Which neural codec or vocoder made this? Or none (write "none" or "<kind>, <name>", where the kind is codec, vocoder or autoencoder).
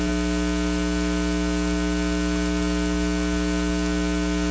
none